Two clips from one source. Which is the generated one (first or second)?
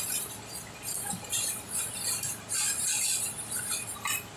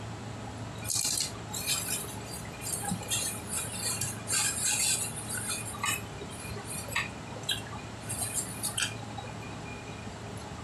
first